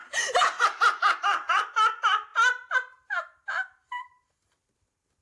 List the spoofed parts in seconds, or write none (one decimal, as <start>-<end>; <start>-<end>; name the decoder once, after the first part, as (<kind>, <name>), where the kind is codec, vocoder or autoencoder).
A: 1.1-5.2 (vocoder, BigVGAN v2)